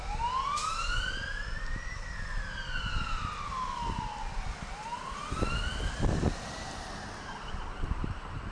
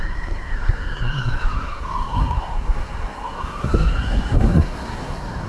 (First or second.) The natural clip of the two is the first